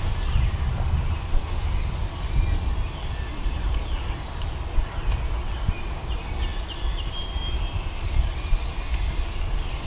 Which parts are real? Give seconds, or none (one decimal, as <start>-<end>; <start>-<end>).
0.0-9.9